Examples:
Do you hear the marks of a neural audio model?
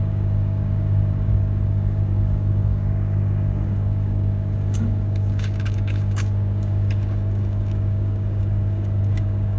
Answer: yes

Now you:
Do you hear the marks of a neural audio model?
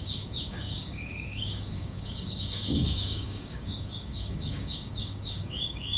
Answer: yes